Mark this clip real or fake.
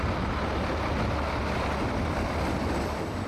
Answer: real